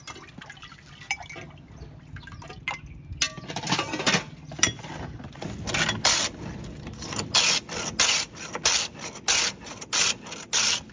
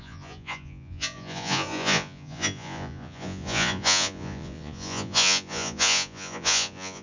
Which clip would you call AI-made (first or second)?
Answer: second